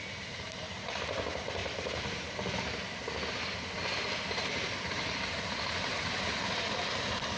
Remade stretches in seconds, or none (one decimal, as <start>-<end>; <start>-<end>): 1.6-2.3